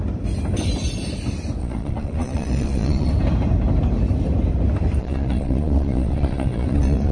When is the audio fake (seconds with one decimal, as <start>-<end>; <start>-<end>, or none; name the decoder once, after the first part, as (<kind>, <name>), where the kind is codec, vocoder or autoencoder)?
1.6-3.1 (vocoder, Vocos); 5.0-7.1